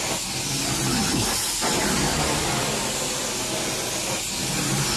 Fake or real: real